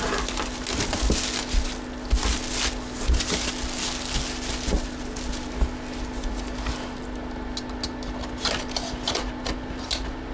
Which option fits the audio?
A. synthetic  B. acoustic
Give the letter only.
B